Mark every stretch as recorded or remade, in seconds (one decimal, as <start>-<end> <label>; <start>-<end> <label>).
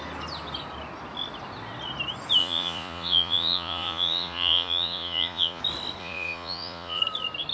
0.0-2.4 recorded; 2.4-5.6 remade; 5.6-6.0 recorded; 6.0-7.0 remade; 7.0-7.5 recorded